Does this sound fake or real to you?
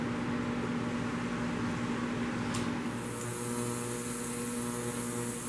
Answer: real